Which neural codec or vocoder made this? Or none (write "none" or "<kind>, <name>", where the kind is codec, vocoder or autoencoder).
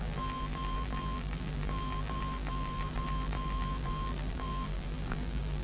vocoder, BigVGAN v2